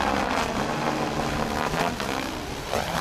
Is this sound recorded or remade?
recorded